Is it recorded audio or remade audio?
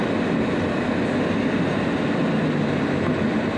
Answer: recorded